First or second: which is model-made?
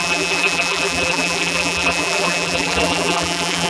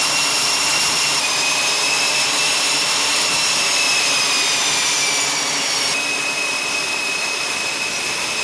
first